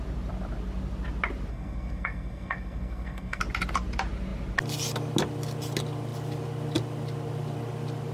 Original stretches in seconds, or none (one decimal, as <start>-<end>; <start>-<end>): 0.0-1.5; 3.4-8.1